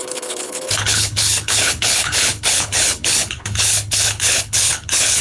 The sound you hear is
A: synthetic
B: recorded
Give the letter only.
A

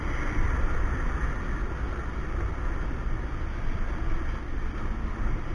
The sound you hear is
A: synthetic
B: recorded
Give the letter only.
B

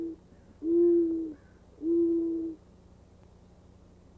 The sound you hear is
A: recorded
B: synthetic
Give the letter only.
A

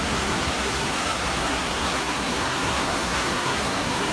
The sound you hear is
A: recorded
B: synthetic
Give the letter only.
B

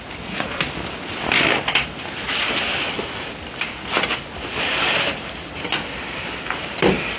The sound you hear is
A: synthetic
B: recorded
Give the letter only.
B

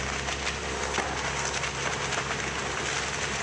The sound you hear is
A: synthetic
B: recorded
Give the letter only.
B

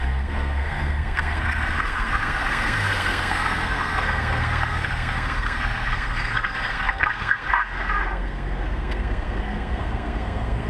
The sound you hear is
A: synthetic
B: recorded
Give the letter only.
A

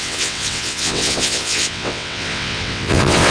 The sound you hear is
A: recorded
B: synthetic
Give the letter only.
B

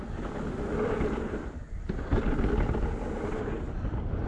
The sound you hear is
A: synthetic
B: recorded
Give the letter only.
B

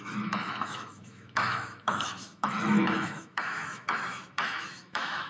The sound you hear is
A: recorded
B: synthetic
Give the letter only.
B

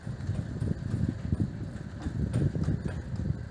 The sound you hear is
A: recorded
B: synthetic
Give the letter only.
A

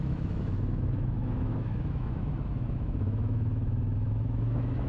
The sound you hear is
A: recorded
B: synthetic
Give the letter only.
B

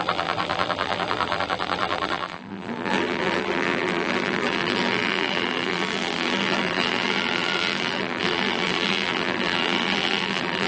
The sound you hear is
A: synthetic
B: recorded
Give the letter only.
A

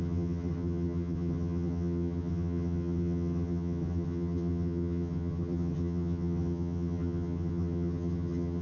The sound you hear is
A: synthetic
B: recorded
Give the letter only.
A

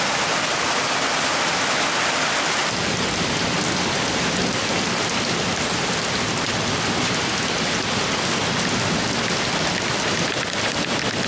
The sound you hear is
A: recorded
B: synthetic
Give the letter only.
A